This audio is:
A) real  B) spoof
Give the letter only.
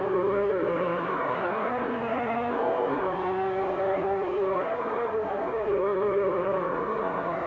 B